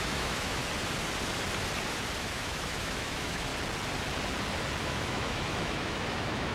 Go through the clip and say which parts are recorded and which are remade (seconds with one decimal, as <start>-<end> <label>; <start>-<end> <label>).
0.0-0.6 remade; 0.6-2.2 recorded; 2.2-3.5 remade; 3.5-4.8 recorded; 4.8-6.5 remade